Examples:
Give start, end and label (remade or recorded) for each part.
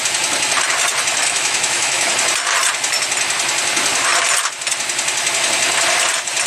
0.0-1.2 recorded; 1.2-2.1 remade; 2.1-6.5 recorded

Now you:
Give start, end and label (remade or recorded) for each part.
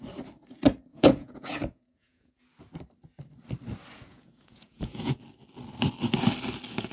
0.0-0.9 recorded; 0.9-2.3 remade; 2.3-4.1 recorded; 4.1-5.2 remade; 5.2-6.9 recorded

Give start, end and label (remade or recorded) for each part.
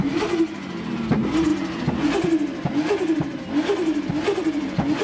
0.0-5.0 recorded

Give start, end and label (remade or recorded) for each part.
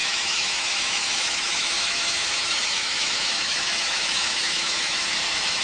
0.0-5.6 remade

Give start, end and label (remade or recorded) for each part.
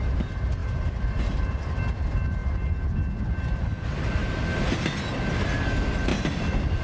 0.0-0.6 recorded; 0.6-1.6 remade; 1.6-6.8 recorded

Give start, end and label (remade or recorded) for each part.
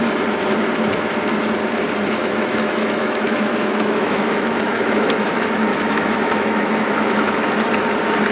0.0-2.2 recorded; 2.2-5.3 remade; 5.3-5.7 recorded; 5.7-7.5 remade; 7.5-8.3 recorded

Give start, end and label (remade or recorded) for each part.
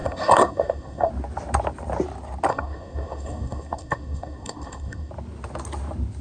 0.0-1.1 remade; 1.1-2.5 recorded; 2.5-5.1 remade; 5.1-6.2 recorded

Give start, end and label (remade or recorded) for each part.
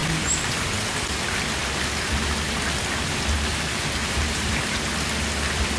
0.0-4.0 recorded; 4.0-4.9 remade; 4.9-5.8 recorded